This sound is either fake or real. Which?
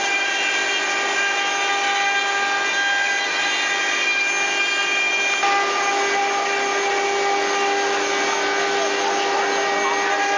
real